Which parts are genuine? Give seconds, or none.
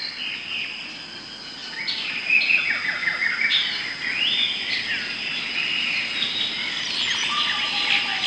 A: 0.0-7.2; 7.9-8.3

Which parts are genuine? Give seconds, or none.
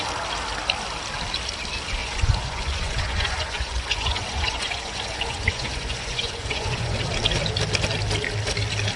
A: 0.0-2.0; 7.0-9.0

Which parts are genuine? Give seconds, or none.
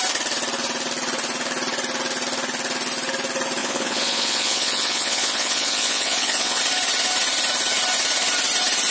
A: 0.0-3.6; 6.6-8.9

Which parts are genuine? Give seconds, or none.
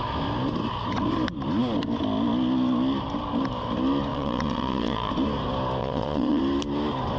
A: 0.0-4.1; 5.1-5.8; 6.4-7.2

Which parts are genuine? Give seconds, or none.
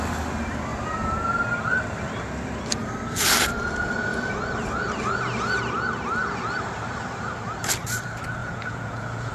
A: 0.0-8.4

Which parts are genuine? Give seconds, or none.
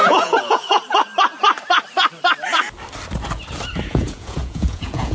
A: 0.8-3.9